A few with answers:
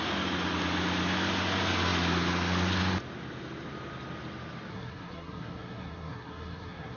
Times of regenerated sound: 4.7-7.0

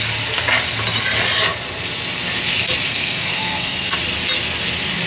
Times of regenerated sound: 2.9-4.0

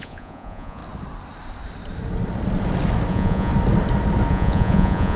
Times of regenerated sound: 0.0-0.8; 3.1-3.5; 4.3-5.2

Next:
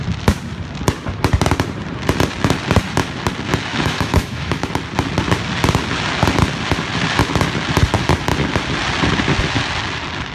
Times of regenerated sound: 3.7-4.7

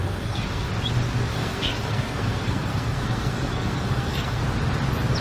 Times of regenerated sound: 0.0-0.7; 1.3-4.4

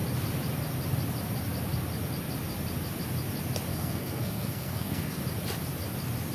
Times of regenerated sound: 3.7-5.2